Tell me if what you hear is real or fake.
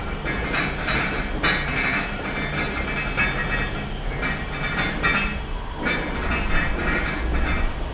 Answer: real